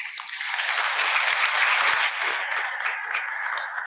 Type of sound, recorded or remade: recorded